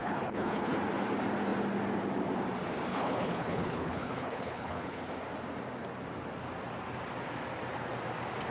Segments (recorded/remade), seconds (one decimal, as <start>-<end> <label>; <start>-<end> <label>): 0.0-0.8 remade; 0.8-2.9 recorded; 2.9-5.0 remade; 5.0-8.5 recorded

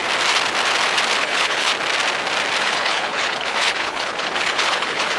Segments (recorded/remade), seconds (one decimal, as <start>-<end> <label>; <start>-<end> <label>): 0.0-1.2 recorded; 1.2-1.7 remade; 1.7-2.6 recorded; 2.6-5.2 remade

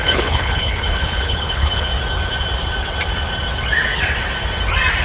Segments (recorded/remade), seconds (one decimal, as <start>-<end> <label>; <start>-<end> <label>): 0.0-1.9 remade; 1.9-5.0 recorded

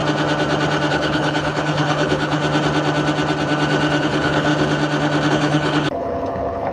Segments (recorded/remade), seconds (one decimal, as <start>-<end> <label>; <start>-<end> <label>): 0.0-0.9 recorded; 0.9-2.4 remade; 2.4-4.0 recorded; 4.0-4.5 remade; 4.5-5.3 recorded; 5.3-6.7 remade